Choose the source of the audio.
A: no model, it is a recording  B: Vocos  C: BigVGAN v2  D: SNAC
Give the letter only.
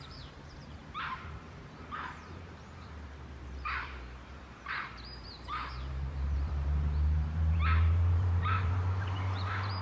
C